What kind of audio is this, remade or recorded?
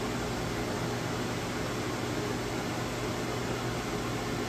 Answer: recorded